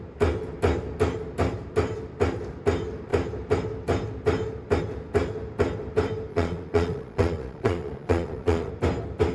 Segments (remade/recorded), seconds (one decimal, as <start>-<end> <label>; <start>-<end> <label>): 0.0-6.3 recorded; 6.3-8.7 remade; 8.7-9.3 recorded